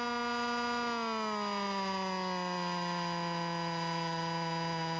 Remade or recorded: recorded